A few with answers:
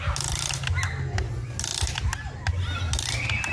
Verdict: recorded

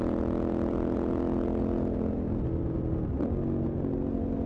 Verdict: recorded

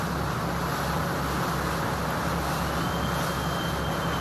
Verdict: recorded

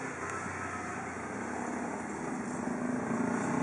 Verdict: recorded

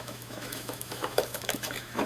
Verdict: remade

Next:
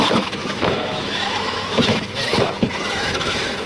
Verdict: remade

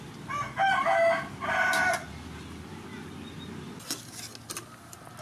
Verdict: recorded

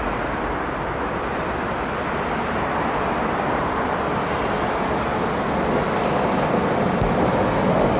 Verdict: recorded